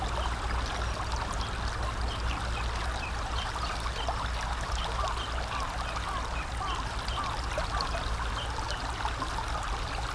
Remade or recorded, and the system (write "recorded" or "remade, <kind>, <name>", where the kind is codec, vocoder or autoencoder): recorded